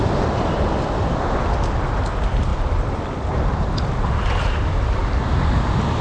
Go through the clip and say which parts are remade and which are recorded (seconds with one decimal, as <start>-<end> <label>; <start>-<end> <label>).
0.0-6.0 recorded